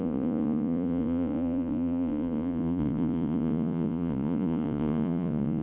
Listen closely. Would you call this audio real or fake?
fake